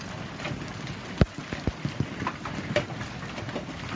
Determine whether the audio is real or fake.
real